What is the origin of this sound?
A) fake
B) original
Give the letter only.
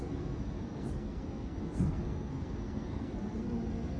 A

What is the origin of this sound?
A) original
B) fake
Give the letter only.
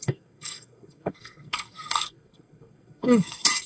B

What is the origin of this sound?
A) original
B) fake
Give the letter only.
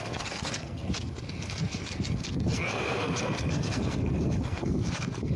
B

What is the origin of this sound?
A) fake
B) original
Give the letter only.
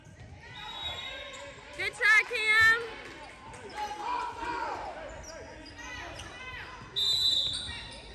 B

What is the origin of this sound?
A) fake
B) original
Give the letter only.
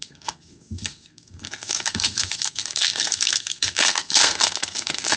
A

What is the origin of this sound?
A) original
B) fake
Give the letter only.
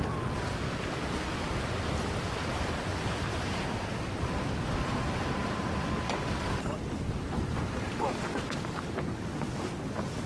A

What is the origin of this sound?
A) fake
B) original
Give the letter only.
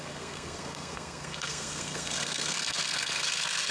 A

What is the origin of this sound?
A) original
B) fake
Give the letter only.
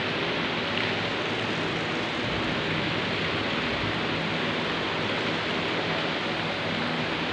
A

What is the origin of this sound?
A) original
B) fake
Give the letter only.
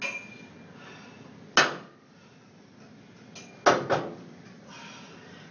A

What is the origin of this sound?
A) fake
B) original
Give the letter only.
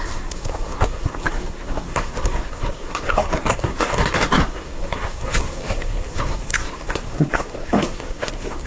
A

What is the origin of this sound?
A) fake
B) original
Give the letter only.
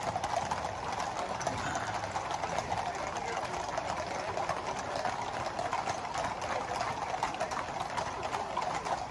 B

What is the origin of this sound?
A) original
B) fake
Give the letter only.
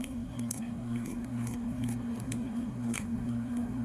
B